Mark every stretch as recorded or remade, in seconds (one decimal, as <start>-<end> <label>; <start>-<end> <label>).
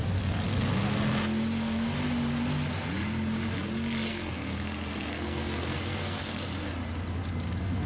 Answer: 0.0-4.1 recorded; 4.1-6.4 remade; 6.4-7.9 recorded